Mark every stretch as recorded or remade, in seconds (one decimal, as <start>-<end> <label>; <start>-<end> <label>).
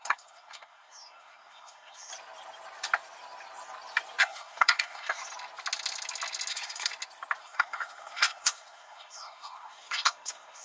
0.0-2.1 remade; 2.1-4.2 recorded; 4.2-5.2 remade; 5.2-6.5 recorded; 6.5-6.9 remade; 6.9-7.4 recorded; 7.4-10.6 remade